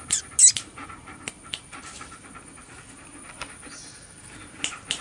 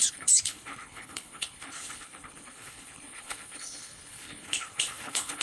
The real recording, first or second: first